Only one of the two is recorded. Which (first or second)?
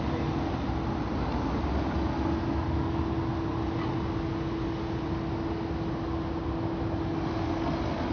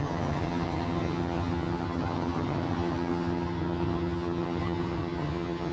first